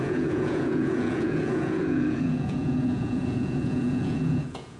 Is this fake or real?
fake